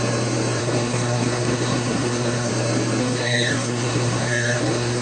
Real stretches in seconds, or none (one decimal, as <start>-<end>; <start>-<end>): 0.0-0.6; 2.5-3.0